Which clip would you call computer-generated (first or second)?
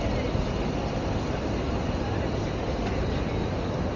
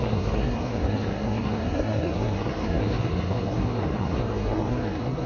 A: second